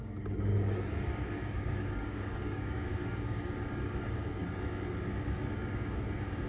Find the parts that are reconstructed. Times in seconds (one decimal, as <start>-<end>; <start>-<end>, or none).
0.0-0.5; 1.0-4.4; 5.7-6.5